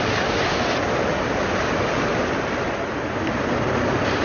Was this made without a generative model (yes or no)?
yes